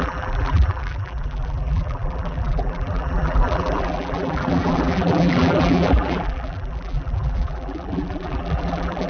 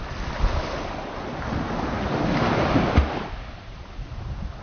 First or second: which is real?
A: second